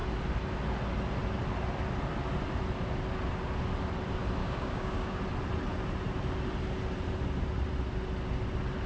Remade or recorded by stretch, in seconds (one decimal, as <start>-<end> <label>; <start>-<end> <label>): 0.0-4.4 recorded; 4.4-5.2 remade; 5.2-8.9 recorded